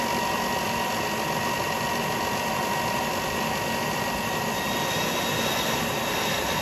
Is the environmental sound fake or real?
real